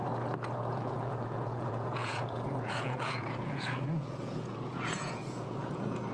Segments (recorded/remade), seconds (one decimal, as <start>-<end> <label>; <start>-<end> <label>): 0.0-0.7 recorded; 0.7-6.1 remade